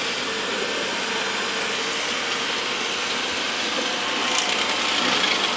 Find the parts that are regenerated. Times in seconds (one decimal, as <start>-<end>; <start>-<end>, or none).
none